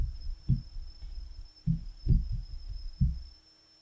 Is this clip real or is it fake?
real